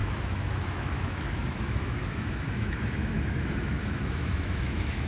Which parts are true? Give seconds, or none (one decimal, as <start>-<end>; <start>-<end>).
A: none